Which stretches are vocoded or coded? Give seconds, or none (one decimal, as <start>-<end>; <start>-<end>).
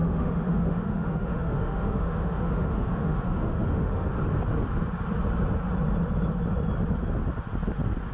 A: 0.0-4.1